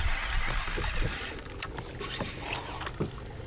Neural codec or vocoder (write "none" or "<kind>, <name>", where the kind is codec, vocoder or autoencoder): none